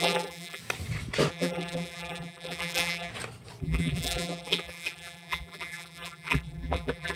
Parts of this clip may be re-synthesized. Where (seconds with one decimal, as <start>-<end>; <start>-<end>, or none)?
0.0-0.6; 1.3-3.1; 3.6-7.2

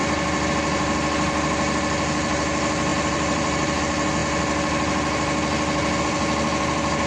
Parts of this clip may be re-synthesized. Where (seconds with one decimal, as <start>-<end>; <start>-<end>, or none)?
2.9-3.8

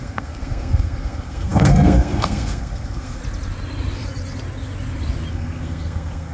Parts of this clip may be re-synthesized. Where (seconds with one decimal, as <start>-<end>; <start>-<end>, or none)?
0.0-3.2; 5.3-6.3

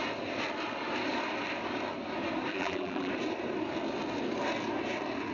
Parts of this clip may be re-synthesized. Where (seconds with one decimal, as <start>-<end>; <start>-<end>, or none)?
2.5-3.1

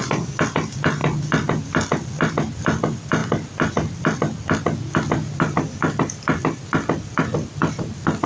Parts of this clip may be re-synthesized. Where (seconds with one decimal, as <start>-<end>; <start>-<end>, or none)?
none